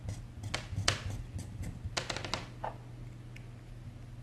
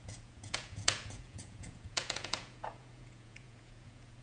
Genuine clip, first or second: first